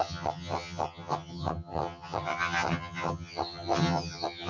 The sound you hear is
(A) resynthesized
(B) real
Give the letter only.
A